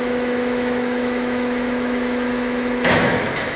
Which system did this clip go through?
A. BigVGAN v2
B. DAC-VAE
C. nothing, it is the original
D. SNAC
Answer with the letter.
B